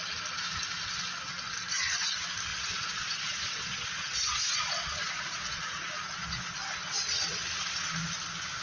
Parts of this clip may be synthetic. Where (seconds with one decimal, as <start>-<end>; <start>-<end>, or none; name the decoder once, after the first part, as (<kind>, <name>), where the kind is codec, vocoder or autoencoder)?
2.5-5.9 (vocoder, Vocos)